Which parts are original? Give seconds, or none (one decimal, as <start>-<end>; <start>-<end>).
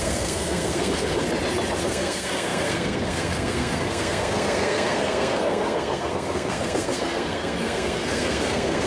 1.2-1.8